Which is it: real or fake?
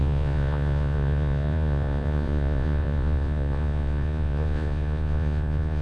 fake